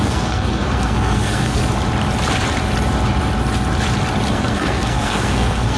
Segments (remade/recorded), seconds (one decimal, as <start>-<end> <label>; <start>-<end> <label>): 0.0-1.6 remade; 1.6-4.3 recorded; 4.3-5.8 remade